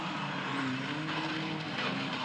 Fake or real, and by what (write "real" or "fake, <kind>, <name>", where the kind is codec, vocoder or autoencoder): real